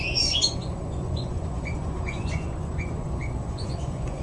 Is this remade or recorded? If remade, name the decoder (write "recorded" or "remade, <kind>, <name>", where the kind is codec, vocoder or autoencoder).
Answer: remade, vocoder, Vocos